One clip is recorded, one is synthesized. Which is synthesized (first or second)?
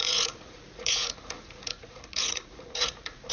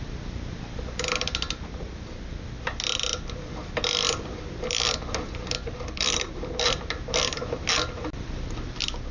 first